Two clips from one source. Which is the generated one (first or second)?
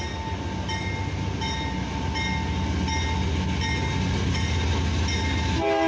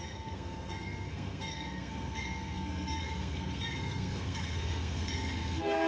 second